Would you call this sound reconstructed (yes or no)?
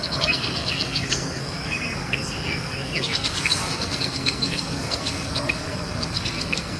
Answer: yes